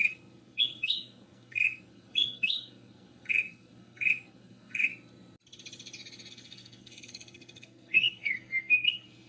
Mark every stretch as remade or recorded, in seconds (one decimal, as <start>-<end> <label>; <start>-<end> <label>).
0.0-4.9 remade; 4.9-6.3 recorded; 6.3-9.3 remade